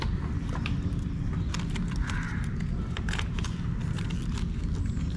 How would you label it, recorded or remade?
recorded